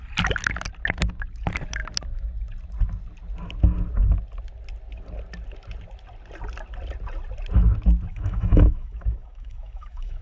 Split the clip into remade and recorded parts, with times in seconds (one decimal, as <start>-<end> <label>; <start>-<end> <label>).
0.0-8.1 recorded; 8.1-10.2 remade

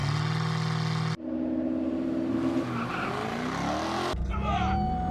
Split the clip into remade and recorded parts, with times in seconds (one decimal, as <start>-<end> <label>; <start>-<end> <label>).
0.0-5.1 recorded

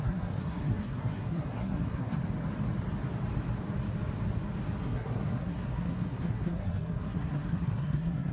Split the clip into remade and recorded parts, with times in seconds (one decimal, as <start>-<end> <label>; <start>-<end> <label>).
0.0-2.2 remade; 2.2-4.8 recorded; 4.8-8.3 remade